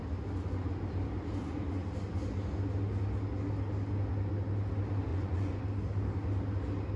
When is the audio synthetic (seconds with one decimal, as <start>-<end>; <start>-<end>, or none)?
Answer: 5.1-5.6